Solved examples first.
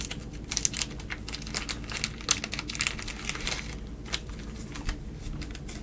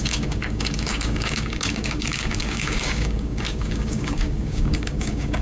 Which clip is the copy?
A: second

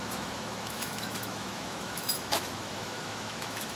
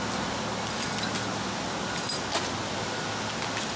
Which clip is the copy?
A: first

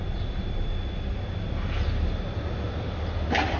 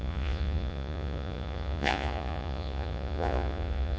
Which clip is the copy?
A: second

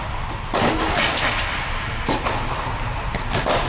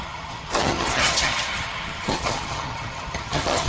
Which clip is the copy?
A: second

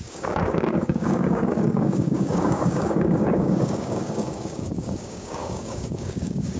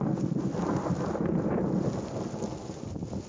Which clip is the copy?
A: first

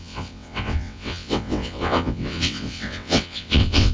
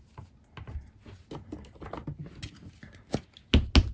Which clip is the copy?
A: first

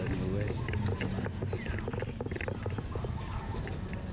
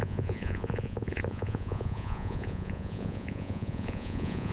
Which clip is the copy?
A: second